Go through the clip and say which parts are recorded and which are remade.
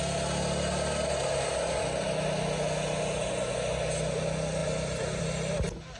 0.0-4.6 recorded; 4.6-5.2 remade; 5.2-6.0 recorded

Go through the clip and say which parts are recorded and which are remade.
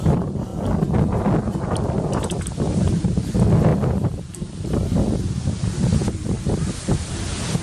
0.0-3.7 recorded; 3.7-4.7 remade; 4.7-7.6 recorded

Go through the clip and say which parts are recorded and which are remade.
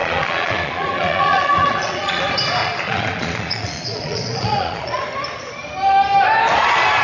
0.0-2.2 remade; 2.2-2.6 recorded; 2.6-5.0 remade; 5.0-7.0 recorded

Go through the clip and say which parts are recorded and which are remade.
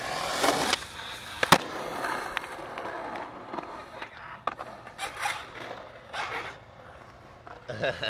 0.0-8.1 recorded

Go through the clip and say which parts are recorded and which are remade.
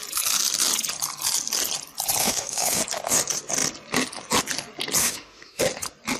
0.0-2.2 recorded; 2.2-2.8 remade; 2.8-5.0 recorded; 5.0-5.6 remade; 5.6-6.2 recorded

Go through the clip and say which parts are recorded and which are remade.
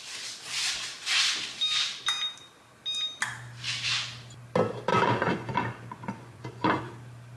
0.0-4.9 recorded; 4.9-6.8 remade; 6.8-7.4 recorded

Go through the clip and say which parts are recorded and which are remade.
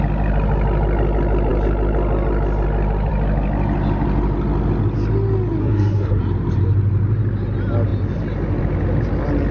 0.0-5.6 recorded; 5.6-6.2 remade; 6.2-9.5 recorded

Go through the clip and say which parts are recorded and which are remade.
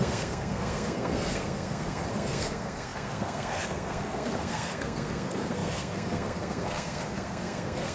0.0-7.9 remade